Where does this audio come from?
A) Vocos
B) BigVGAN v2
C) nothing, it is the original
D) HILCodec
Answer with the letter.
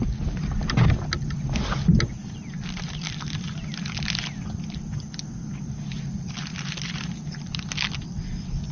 C